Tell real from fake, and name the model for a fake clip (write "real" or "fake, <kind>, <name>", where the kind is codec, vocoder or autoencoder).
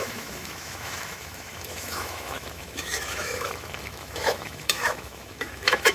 fake, autoencoder, DAC-VAE